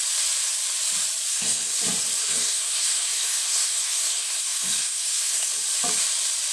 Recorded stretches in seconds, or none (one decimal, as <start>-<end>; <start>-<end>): 0.0-1.3; 1.8-2.2; 5.5-6.5